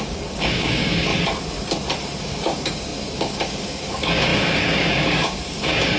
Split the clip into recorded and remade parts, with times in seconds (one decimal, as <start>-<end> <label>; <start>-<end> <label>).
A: 0.0-1.1 remade; 1.1-2.2 recorded; 2.2-6.0 remade